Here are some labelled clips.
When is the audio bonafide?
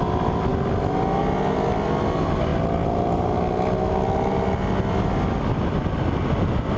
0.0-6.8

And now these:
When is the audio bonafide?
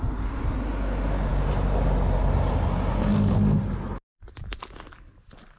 0.0-5.6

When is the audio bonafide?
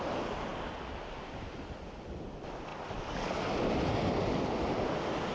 0.0-5.3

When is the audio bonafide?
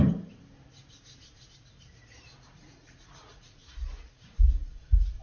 0.0-2.5; 3.6-4.7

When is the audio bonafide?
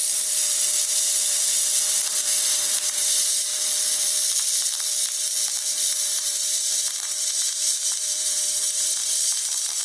3.5-5.9